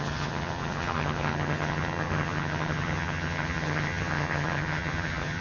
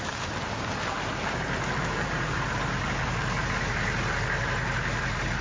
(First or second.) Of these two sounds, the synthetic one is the first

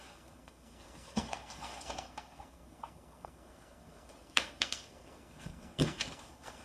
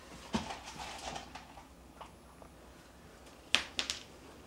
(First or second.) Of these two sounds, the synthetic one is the first